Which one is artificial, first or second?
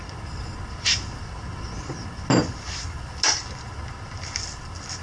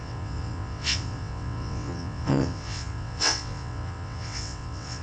second